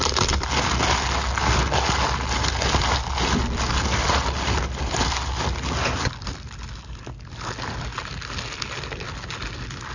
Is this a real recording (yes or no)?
yes